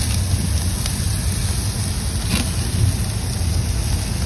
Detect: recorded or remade recorded